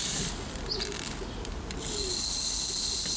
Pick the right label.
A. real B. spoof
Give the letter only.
A